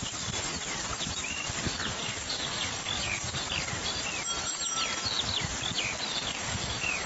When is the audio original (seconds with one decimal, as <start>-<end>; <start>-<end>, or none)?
0.0-2.0; 3.4-6.1